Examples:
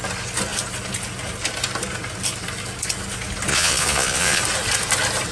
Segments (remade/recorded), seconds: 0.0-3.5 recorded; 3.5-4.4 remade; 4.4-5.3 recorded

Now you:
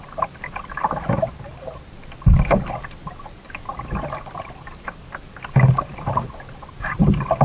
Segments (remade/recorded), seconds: 0.0-7.4 recorded

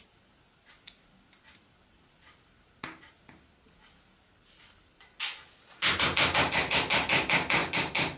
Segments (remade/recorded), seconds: 0.0-8.2 recorded

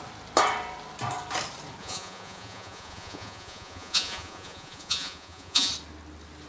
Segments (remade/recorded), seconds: 0.0-1.8 recorded; 1.8-5.7 remade; 5.7-6.5 recorded

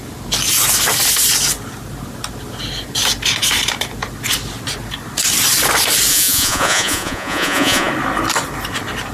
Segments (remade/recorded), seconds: 0.0-6.1 recorded; 6.1-7.9 remade; 7.9-9.1 recorded